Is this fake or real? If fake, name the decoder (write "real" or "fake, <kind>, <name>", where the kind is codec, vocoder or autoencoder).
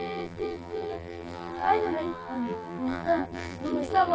fake, vocoder, BigVGAN v2